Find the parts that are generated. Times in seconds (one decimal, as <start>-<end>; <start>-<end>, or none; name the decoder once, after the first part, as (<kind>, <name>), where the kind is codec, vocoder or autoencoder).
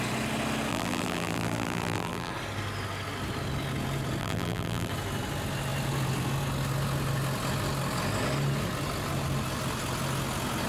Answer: 0.7-2.3 (vocoder, BigVGAN v2); 4.2-4.9